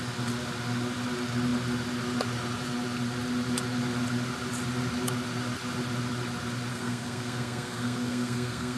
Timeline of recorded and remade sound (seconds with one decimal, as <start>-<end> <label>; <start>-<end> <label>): 0.0-6.7 recorded; 6.7-8.8 remade